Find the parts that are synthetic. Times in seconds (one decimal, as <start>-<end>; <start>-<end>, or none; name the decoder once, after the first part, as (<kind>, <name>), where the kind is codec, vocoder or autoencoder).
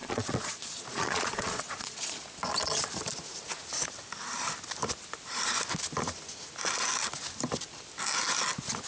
0.0-2.2 (vocoder, Vocos)